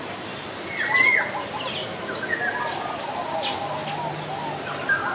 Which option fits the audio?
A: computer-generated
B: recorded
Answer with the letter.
B